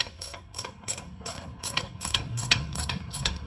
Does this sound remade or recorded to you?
remade